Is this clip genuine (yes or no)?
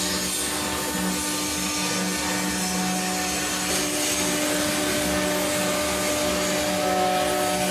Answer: yes